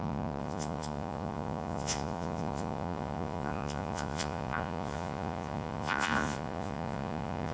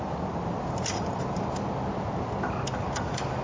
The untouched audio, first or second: second